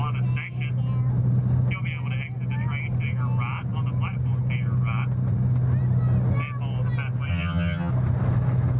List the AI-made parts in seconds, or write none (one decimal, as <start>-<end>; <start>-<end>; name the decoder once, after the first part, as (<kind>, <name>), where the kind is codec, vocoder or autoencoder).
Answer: 7.3-7.9 (vocoder, HiFi-GAN)